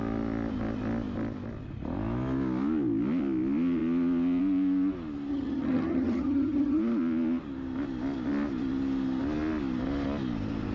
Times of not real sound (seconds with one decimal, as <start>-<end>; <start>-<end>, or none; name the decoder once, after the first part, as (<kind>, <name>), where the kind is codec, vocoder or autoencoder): 5.3-6.8 (vocoder, HiFi-GAN)